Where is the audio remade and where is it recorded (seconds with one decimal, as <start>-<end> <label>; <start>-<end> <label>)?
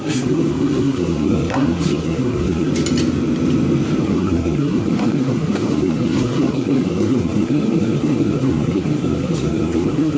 0.0-2.7 remade; 2.7-4.0 recorded; 4.0-10.2 remade